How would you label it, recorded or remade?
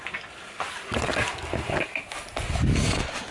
recorded